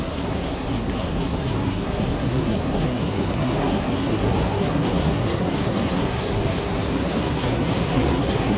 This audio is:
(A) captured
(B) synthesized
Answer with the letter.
B